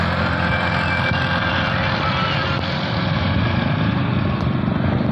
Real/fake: real